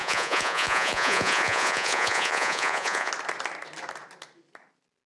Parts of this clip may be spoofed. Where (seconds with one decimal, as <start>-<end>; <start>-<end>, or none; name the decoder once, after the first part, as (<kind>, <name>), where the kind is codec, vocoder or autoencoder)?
0.0-3.1 (vocoder, Vocos)